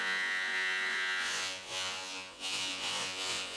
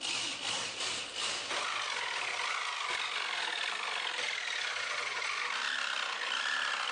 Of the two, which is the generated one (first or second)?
first